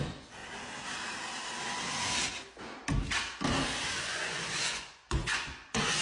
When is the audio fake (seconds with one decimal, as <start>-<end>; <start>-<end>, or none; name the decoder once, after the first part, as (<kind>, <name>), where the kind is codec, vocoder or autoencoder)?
0.0-0.4 (vocoder, Vocos); 4.0-6.0